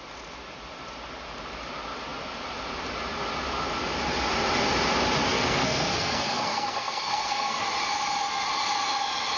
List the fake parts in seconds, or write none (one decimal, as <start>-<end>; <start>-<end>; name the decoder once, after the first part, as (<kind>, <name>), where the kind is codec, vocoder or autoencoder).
5.3-7.6 (codec, SNAC)